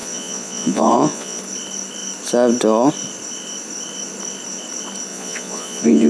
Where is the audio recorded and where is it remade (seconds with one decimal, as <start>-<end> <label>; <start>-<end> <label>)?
0.0-1.4 remade; 1.4-5.1 recorded; 5.1-6.1 remade